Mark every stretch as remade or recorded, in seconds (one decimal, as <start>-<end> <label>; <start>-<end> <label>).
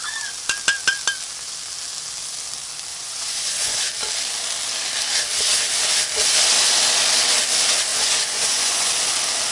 0.0-2.9 recorded; 2.9-3.8 remade; 3.8-7.9 recorded; 7.9-8.9 remade; 8.9-9.5 recorded